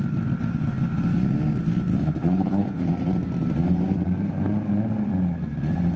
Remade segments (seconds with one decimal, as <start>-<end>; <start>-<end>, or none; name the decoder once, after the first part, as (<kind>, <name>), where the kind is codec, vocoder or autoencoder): 1.9-2.9 (codec, HILCodec)